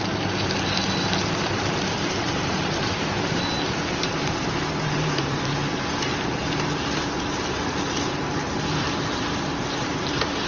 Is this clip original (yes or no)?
no